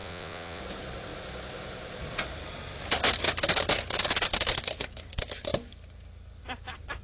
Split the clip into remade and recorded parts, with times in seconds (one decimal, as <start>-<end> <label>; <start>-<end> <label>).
0.0-0.6 remade; 0.6-7.0 recorded